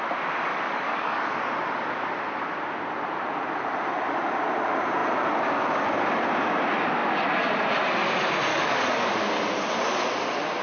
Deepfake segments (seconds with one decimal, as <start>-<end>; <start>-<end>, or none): 0.5-1.4; 8.5-9.3